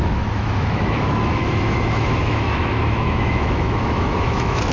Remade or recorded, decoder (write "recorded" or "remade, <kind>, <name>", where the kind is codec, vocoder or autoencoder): remade, autoencoder, DAC-VAE